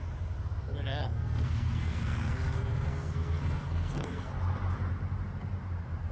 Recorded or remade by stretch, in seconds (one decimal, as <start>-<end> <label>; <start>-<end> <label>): 0.0-0.6 recorded; 0.6-4.3 remade; 4.3-6.1 recorded